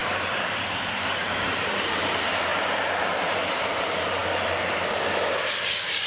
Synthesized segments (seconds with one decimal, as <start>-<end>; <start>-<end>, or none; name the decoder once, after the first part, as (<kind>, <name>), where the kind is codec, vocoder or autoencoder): 0.0-2.5 (vocoder, BigVGAN v2); 3.3-4.2